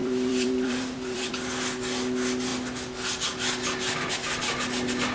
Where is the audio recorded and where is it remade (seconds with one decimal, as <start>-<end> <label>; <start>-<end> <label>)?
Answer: 0.0-1.3 remade; 1.3-5.1 recorded